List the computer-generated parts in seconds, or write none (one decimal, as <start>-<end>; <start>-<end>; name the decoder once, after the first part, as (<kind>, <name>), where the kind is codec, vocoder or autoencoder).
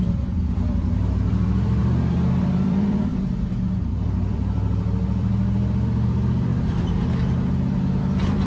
0.0-1.8 (vocoder, BigVGAN v2); 2.4-6.5; 8.0-8.5